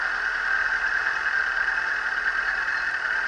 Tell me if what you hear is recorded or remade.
recorded